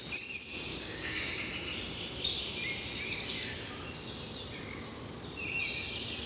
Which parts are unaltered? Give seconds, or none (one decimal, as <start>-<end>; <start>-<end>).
0.0-0.7; 1.3-6.3